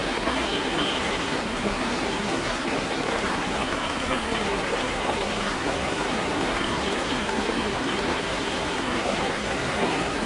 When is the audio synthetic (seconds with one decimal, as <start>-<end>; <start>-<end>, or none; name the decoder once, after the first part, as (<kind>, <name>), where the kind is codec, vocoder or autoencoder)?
0.0-10.3 (codec, SNAC)